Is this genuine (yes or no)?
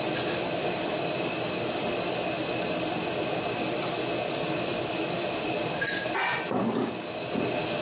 yes